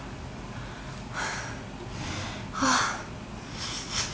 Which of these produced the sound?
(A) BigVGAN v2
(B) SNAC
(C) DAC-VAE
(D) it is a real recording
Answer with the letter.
D